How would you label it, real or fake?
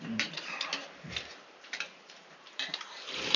fake